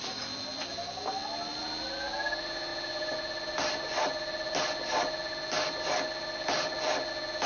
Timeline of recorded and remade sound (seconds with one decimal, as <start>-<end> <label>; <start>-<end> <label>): 0.0-7.5 recorded